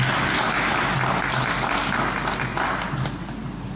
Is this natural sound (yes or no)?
yes